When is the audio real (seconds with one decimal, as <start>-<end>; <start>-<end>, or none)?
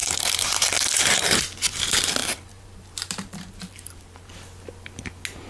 1.4-2.2; 4.3-5.5